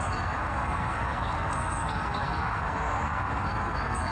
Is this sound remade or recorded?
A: remade